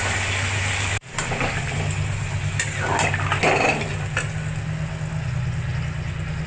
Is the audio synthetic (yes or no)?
no